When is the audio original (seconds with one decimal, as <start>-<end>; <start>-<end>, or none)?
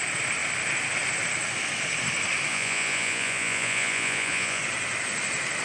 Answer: 0.0-2.5; 4.6-5.6